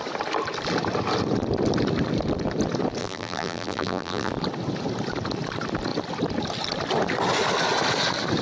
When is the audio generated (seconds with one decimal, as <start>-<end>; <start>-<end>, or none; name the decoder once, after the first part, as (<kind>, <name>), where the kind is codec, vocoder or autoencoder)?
3.0-4.3 (vocoder, BigVGAN v2)